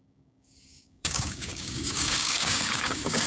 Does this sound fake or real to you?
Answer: fake